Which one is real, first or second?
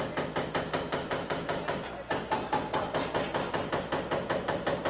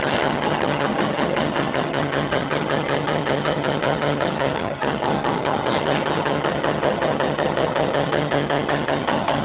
first